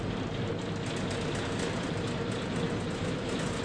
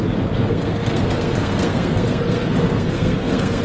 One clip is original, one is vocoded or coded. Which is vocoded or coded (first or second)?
second